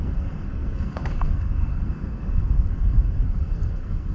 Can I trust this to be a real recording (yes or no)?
no